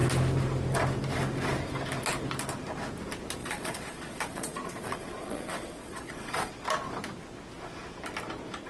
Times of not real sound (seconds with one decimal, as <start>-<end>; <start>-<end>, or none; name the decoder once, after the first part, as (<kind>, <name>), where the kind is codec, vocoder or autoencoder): 3.4-6.5 (vocoder, Vocos)